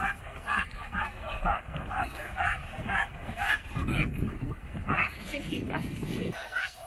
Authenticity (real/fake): fake